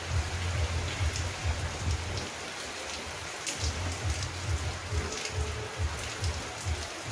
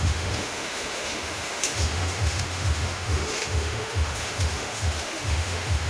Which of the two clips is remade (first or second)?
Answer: second